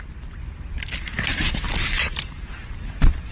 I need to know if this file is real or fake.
fake